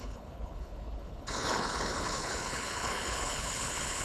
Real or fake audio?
fake